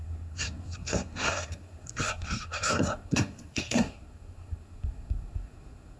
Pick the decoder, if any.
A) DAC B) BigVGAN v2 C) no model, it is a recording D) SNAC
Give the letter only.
D